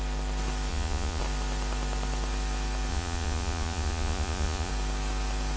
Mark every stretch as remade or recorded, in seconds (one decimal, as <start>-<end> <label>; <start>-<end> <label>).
0.0-0.7 recorded; 0.7-1.2 remade; 1.2-2.9 recorded; 2.9-4.7 remade; 4.7-5.6 recorded

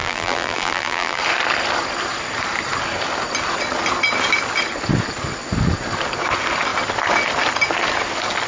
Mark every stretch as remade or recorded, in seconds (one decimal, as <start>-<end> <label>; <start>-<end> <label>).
0.0-1.2 remade; 1.2-8.5 recorded

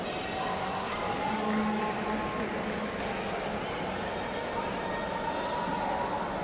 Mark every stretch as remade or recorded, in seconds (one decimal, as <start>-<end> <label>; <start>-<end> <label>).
0.0-0.5 recorded; 0.5-1.8 remade; 1.8-6.4 recorded